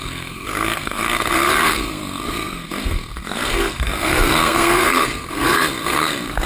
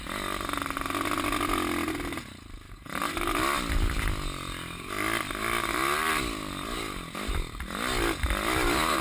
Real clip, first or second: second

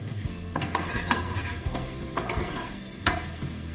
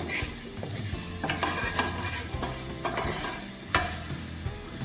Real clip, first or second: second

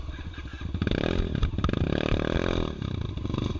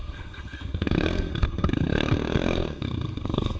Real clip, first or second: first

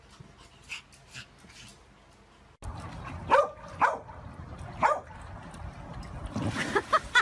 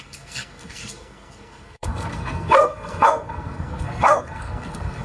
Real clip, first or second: first